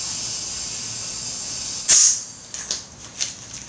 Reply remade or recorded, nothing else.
recorded